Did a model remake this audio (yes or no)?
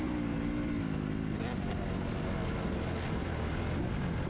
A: no